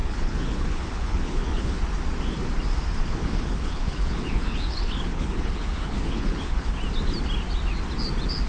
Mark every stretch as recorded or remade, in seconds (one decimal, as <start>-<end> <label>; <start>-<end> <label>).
0.0-1.8 remade; 1.8-3.0 recorded; 3.0-6.8 remade; 6.8-8.5 recorded